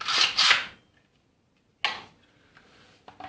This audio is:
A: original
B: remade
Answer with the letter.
A